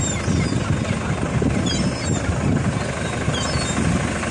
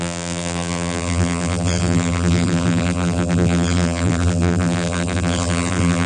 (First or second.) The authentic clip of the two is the first